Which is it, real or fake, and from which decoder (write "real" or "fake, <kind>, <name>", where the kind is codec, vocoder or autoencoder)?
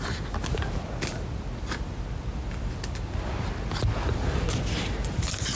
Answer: real